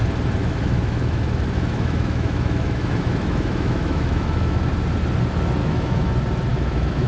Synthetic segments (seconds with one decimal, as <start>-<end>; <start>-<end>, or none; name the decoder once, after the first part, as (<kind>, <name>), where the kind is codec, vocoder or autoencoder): 0.4-4.7 (autoencoder, DAC-VAE); 5.6-6.1; 6.5-7.1